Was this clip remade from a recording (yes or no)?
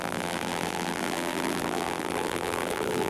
yes